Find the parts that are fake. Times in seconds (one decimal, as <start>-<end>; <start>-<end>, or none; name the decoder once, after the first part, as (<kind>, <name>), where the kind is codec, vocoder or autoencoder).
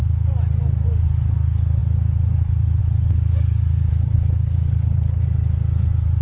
3.9-5.2 (codec, HILCodec)